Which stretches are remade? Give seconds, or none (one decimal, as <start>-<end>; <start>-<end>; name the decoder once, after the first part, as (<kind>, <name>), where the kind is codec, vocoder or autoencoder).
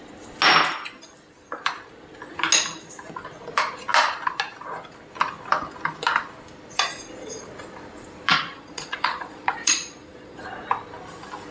8.3-10.4 (vocoder, Vocos)